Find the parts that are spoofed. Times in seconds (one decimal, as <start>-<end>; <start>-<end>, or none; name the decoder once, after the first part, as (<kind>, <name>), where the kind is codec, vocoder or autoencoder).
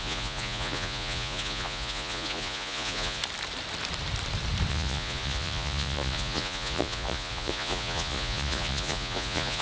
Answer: 0.0-3.2 (vocoder, Vocos); 4.7-9.6